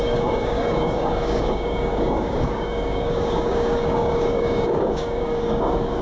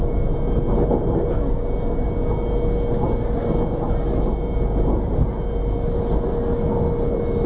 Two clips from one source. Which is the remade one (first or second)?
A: first